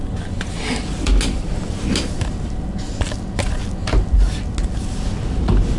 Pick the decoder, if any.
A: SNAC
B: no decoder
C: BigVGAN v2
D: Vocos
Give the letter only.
B